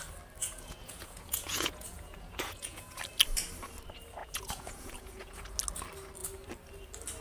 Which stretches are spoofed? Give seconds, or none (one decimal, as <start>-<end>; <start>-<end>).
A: 0.4-3.0; 4.2-5.5

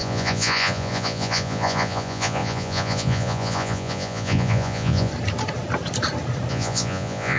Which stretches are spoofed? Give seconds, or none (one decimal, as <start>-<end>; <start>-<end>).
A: 0.0-5.1; 6.5-7.4